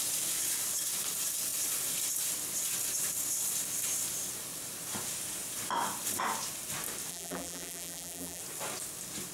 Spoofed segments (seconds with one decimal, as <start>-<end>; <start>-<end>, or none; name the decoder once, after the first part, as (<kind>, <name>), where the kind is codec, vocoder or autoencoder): 7.1-8.4 (vocoder, BigVGAN v2)